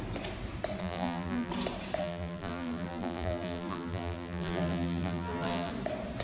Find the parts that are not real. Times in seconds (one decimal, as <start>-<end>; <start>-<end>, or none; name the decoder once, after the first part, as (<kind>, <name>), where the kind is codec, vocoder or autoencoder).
0.8-1.5 (vocoder, BigVGAN v2); 2.0-5.7